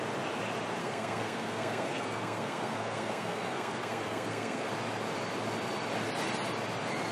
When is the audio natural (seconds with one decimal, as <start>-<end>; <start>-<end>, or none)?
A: 0.0-0.8; 4.7-7.1